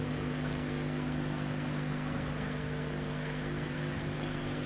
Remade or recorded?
remade